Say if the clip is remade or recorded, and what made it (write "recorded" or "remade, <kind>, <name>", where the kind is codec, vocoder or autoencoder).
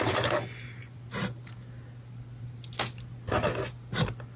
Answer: recorded